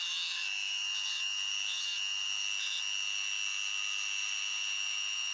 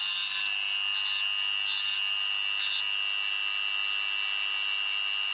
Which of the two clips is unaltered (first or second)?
second